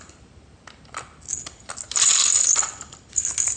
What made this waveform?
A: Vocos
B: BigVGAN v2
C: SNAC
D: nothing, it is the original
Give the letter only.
D